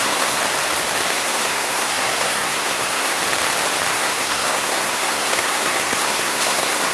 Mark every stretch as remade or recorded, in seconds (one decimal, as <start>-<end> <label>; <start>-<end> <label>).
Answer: 0.0-0.4 remade; 0.4-1.1 recorded; 1.1-3.2 remade; 3.2-3.9 recorded; 3.9-6.9 remade